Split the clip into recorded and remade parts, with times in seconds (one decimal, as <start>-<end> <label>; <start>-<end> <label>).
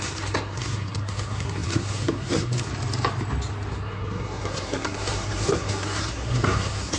0.0-2.7 remade; 2.7-3.7 recorded; 3.7-7.0 remade